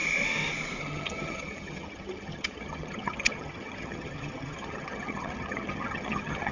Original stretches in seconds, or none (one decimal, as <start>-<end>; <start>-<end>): 0.0-0.8